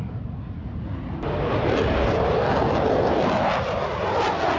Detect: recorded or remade recorded